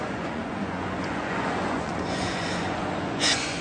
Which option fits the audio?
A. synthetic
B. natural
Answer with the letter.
A